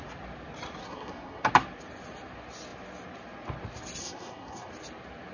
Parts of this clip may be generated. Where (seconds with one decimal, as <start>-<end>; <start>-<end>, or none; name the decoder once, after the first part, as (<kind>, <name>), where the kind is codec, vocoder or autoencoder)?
0.8-1.5 (codec, SNAC); 4.0-4.7

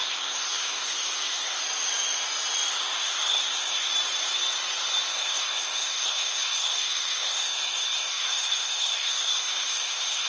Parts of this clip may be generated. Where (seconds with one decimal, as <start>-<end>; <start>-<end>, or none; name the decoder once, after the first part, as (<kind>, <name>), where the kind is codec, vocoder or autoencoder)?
0.0-1.6 (codec, SNAC); 2.7-3.9; 5.1-10.3

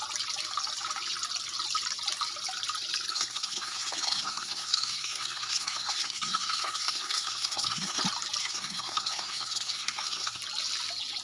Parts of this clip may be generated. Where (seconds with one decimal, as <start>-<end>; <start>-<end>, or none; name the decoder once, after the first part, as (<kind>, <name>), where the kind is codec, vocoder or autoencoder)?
3.1-8.0 (codec, SNAC); 8.4-10.4

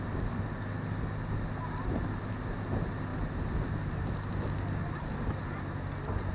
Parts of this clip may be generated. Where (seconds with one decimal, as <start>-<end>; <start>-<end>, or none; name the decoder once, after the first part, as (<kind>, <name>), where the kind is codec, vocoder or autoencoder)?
none

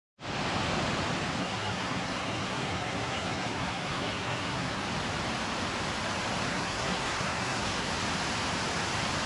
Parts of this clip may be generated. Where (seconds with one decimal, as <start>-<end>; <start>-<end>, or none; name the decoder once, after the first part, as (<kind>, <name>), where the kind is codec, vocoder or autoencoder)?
1.4-4.8 (codec, SNAC); 6.5-7.9